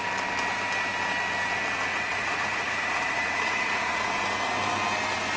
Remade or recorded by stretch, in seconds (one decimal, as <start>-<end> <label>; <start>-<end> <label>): 0.0-1.9 recorded; 1.9-4.1 remade; 4.1-5.4 recorded